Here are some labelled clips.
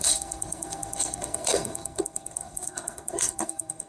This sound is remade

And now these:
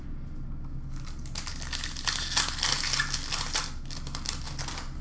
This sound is recorded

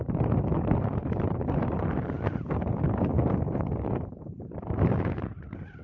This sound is remade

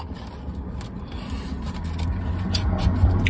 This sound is recorded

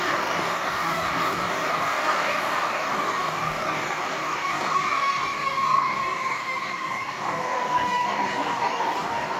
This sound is remade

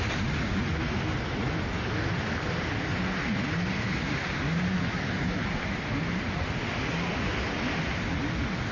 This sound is recorded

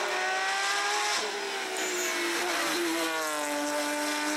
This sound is recorded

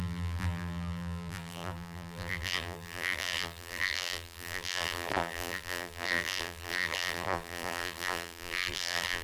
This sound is remade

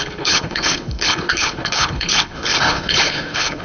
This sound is remade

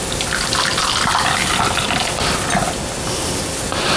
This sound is recorded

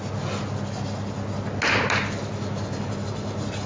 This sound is recorded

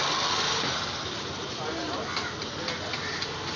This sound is recorded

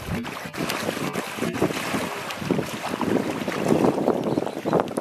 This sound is recorded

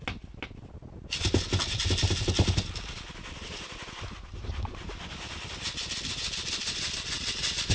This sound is recorded